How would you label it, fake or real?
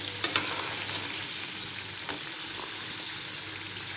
real